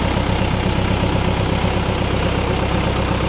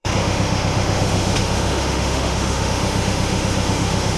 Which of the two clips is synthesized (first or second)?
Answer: second